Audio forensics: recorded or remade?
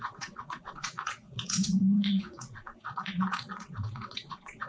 remade